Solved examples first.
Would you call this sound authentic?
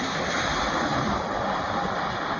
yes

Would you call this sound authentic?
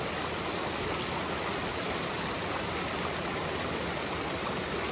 yes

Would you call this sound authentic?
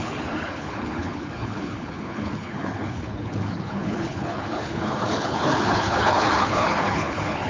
no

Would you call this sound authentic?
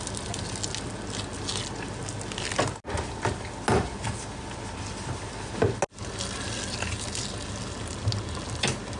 yes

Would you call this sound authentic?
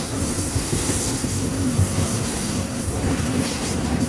no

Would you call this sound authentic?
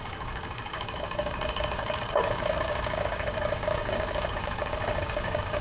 no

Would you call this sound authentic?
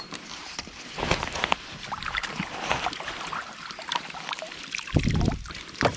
no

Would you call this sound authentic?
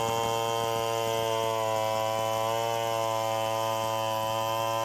yes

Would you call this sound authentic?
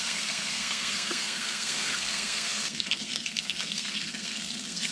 no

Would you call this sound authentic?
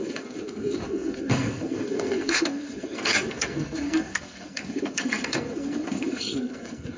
no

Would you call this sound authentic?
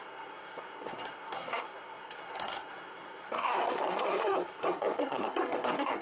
no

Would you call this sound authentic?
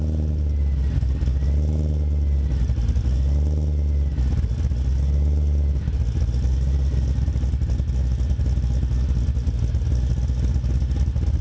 yes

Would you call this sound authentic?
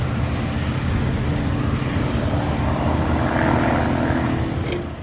yes